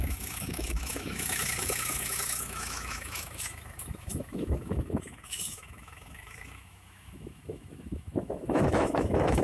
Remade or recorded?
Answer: remade